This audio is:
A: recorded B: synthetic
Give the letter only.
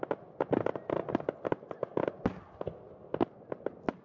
A